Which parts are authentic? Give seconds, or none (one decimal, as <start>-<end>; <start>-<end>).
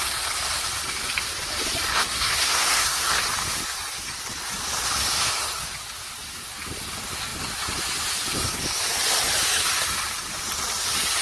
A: 0.0-1.9; 3.2-11.2